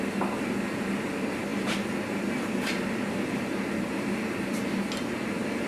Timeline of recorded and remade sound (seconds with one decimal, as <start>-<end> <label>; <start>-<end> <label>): 0.0-5.7 recorded